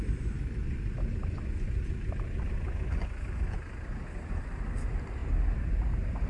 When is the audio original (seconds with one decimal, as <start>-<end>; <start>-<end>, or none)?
0.6-4.4; 5.2-6.3